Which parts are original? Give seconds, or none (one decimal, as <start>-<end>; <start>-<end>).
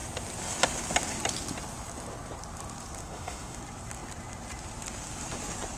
0.0-3.0; 3.6-5.8